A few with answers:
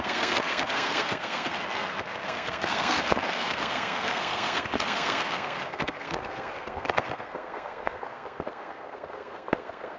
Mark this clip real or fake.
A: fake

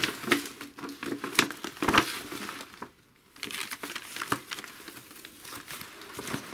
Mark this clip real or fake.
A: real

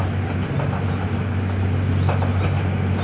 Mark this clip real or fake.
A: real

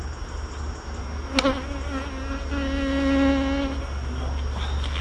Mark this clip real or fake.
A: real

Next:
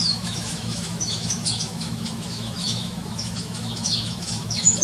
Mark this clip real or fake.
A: fake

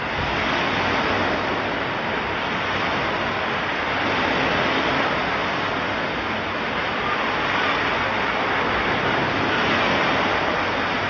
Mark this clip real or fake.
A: real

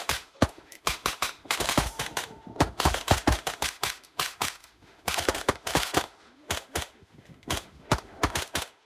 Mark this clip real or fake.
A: fake